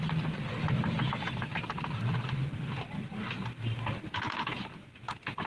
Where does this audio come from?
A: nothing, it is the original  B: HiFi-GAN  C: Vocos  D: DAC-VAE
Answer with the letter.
A